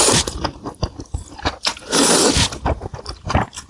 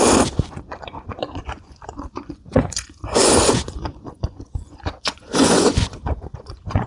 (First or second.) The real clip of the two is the first